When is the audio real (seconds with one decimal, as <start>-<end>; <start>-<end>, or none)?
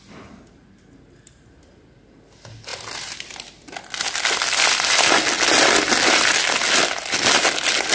0.0-7.9